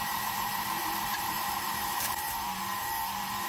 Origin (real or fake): fake